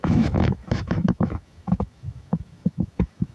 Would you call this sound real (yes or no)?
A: no